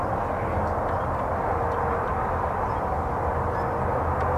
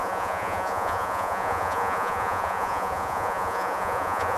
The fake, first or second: second